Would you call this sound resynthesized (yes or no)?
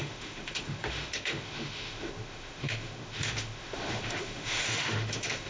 yes